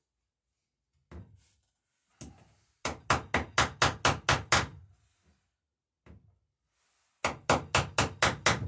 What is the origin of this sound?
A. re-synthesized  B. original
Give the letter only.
B